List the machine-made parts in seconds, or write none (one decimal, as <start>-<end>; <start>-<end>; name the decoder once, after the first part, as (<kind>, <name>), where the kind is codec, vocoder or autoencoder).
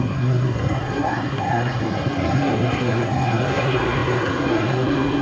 0.0-5.2 (codec, SNAC)